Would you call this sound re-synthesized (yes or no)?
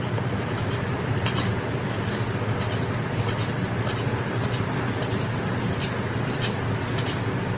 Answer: no